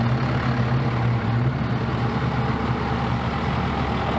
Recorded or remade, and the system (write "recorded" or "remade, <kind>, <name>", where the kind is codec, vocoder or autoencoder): recorded